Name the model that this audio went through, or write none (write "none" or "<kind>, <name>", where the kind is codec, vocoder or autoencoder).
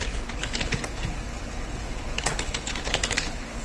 codec, HILCodec